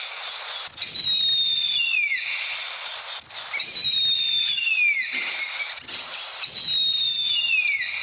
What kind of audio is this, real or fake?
real